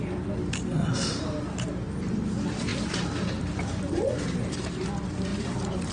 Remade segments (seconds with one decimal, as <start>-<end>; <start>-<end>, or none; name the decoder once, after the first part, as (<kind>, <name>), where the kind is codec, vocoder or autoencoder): 2.7-3.8 (vocoder, BigVGAN v2)